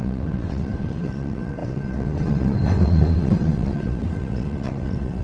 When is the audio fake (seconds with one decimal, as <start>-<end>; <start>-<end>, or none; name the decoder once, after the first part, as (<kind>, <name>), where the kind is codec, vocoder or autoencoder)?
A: 0.0-5.2 (vocoder, WaveNeXt)

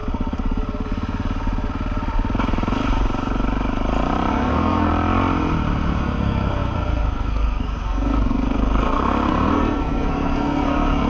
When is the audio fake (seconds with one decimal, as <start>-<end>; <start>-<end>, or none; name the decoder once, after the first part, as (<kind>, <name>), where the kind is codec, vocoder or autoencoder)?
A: 4.3-4.9 (codec, SNAC); 6.0-11.1